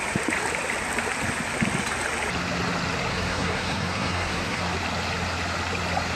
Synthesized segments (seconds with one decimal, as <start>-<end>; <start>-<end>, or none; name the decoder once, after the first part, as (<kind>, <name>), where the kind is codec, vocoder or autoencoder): 3.1-4.6 (codec, SNAC)